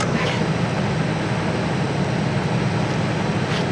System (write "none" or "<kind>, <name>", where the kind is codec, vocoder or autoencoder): none